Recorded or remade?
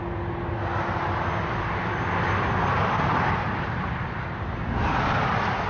recorded